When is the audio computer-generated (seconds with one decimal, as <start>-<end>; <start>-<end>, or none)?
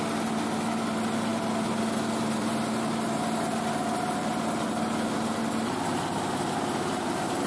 none